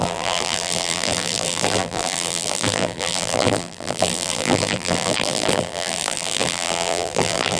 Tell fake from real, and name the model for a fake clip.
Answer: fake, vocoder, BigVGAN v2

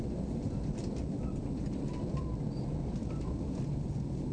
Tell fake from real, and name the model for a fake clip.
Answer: real